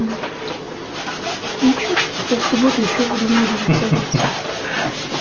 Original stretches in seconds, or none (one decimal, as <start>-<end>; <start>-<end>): 0.0-5.2